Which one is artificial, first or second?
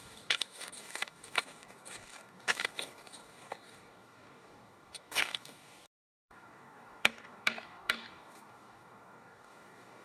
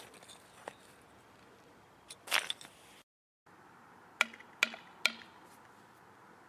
first